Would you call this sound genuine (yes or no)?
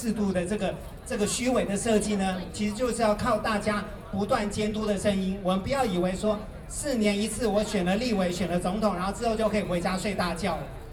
no